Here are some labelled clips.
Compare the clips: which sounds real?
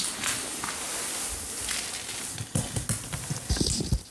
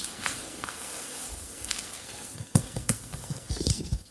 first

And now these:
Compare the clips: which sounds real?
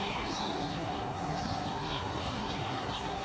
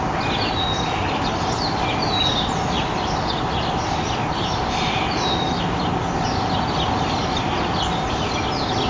second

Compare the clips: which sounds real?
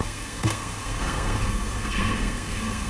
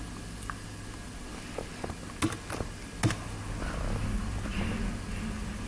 second